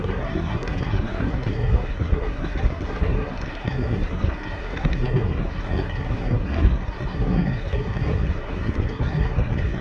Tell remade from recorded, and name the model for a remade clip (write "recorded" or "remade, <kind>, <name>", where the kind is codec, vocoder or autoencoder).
remade, codec, SNAC